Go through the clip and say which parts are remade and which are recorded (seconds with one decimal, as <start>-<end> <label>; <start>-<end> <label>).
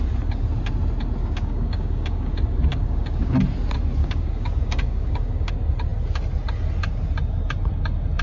0.0-1.2 recorded; 1.2-2.3 remade; 2.3-2.7 recorded; 2.7-3.4 remade; 3.4-4.0 recorded; 4.0-5.5 remade; 5.5-8.2 recorded